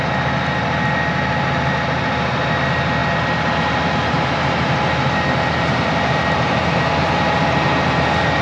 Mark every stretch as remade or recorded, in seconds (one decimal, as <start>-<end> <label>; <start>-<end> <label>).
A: 0.0-8.4 recorded